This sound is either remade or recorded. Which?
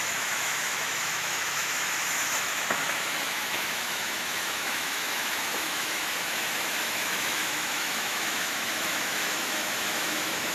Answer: remade